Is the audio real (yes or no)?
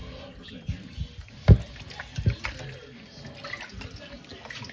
yes